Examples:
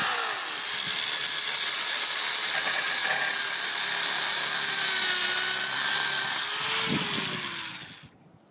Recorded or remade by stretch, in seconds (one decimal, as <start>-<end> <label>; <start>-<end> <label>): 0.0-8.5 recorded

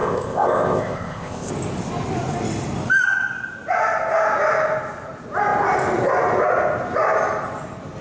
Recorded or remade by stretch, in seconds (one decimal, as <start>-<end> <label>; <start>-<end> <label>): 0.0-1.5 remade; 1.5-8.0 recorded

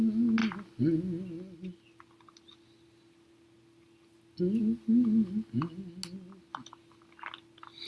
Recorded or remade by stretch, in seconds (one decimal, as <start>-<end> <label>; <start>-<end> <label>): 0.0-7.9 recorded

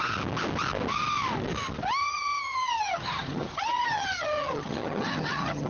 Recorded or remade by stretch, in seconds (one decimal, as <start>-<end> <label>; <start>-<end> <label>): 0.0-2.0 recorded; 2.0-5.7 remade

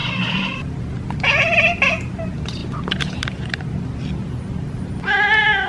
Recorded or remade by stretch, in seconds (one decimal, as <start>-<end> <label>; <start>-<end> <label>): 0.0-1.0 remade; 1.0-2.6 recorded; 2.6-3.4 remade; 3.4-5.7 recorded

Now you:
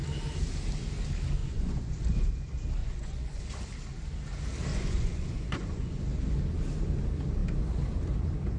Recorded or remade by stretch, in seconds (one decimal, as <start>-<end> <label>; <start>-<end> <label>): 0.0-1.4 recorded; 1.4-2.0 remade; 2.0-2.8 recorded; 2.8-3.4 remade; 3.4-4.7 recorded; 4.7-6.0 remade; 6.0-8.6 recorded

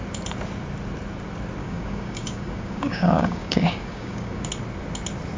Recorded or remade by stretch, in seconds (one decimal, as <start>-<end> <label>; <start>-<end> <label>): 0.0-1.6 recorded; 1.6-4.5 remade; 4.5-5.4 recorded

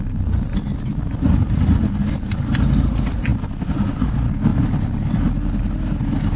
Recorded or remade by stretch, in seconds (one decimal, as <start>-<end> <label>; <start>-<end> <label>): 0.0-6.4 recorded